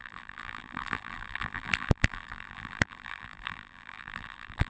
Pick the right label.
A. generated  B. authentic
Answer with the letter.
A